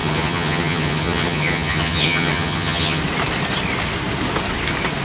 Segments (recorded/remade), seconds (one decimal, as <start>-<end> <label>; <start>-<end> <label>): 0.0-3.0 remade; 3.0-5.0 recorded